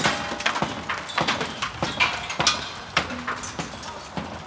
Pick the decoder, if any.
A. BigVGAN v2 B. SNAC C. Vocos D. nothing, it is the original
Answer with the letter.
D